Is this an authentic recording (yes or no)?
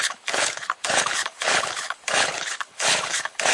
no